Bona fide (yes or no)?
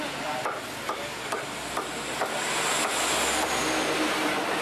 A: yes